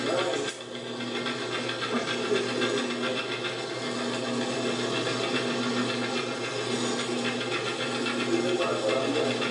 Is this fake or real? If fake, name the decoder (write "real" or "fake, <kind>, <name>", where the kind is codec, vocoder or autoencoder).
real